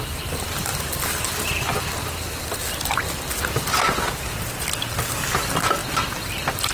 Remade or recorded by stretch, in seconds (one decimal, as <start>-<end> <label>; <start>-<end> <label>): 0.0-6.7 recorded